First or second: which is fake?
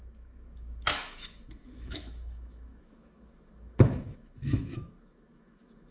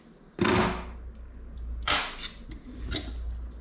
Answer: first